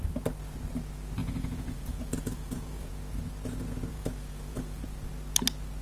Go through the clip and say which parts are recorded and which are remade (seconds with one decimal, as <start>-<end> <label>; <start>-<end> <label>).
0.0-1.2 recorded; 1.2-2.9 remade; 2.9-3.9 recorded; 3.9-4.8 remade; 4.8-5.8 recorded